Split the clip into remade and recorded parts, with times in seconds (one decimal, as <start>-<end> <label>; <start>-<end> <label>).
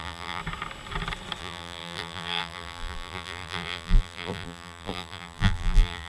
0.0-0.4 remade; 0.4-1.4 recorded; 1.4-6.1 remade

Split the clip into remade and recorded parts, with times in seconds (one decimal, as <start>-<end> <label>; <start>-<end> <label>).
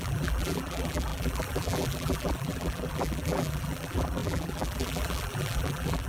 0.0-6.1 remade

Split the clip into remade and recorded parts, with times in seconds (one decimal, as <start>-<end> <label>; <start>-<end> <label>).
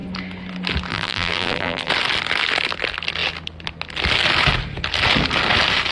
0.0-0.9 recorded; 0.9-1.9 remade; 1.9-5.9 recorded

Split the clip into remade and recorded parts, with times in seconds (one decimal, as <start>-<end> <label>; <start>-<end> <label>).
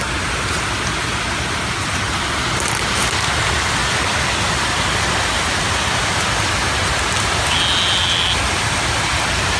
0.0-3.8 recorded; 3.8-6.1 remade; 6.1-9.6 recorded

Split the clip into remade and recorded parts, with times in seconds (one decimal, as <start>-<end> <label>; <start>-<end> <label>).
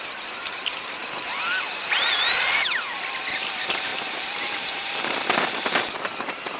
0.0-1.0 remade; 1.0-1.6 recorded; 1.6-6.6 remade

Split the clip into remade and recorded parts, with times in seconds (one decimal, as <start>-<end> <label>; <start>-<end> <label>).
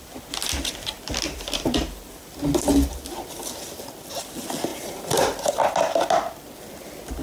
0.0-4.7 recorded; 4.7-5.7 remade; 5.7-7.2 recorded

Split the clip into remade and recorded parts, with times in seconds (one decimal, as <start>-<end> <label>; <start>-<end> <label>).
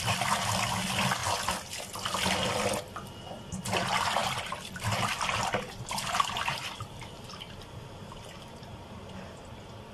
0.0-4.2 recorded; 4.2-8.4 remade; 8.4-9.9 recorded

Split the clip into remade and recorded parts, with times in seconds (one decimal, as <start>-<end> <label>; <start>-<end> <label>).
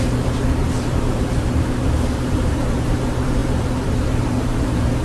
0.0-5.0 remade